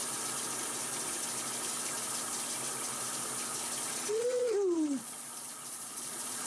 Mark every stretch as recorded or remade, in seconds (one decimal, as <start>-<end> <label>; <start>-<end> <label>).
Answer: 0.0-3.9 recorded; 3.9-6.5 remade